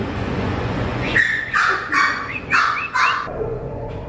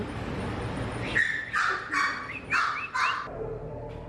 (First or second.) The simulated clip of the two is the first